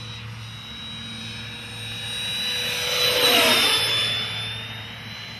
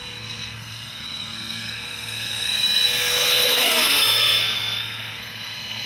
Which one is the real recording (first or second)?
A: first